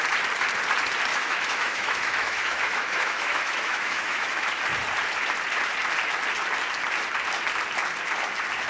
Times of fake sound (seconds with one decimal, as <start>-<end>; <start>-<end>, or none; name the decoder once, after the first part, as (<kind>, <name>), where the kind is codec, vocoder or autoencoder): 1.1-4.6 (autoencoder, DAC-VAE)